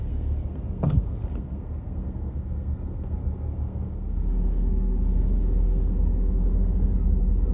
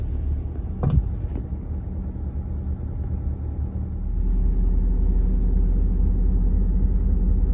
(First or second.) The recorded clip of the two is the second